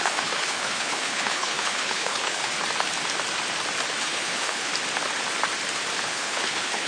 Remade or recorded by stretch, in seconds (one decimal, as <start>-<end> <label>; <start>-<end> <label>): 0.0-2.5 remade; 2.5-4.0 recorded; 4.0-4.7 remade; 4.7-6.0 recorded; 6.0-6.9 remade

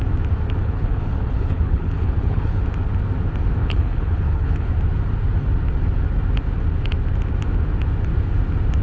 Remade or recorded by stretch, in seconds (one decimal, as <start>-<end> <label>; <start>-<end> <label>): 0.0-0.6 recorded; 0.6-2.6 remade; 2.6-3.6 recorded; 3.6-4.7 remade; 4.7-8.8 recorded

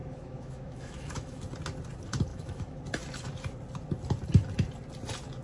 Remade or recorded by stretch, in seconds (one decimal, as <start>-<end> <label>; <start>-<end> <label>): 0.0-1.4 remade; 1.4-2.3 recorded; 2.3-2.8 remade; 2.8-5.4 recorded

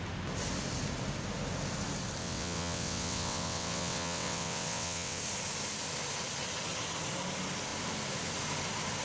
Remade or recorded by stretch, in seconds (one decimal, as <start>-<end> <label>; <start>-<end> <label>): 0.0-2.2 recorded; 2.2-5.2 remade; 5.2-9.0 recorded

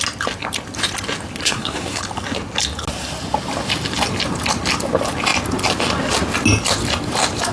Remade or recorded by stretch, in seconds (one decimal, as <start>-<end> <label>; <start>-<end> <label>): 0.0-1.4 recorded; 1.4-2.0 remade; 2.0-7.5 recorded